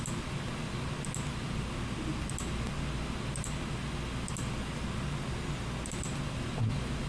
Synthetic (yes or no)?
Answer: no